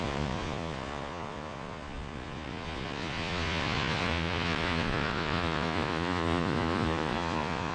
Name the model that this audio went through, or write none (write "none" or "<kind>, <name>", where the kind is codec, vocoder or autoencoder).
vocoder, Vocos